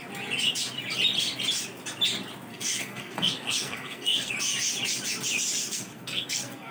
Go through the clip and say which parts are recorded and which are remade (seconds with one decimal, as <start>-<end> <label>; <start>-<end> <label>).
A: 0.0-2.5 recorded; 2.5-4.3 remade; 4.3-5.6 recorded; 5.6-6.7 remade